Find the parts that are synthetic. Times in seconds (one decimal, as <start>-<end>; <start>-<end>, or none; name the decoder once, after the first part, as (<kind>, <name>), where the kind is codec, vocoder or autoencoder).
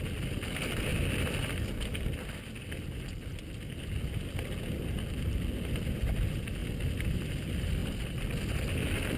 none